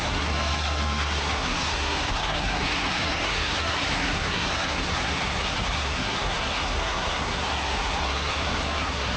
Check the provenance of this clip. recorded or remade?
remade